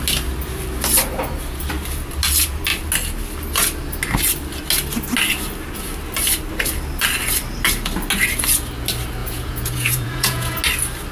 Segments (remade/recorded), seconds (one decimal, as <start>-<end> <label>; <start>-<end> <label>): 0.0-9.2 recorded; 9.2-10.6 remade; 10.6-11.1 recorded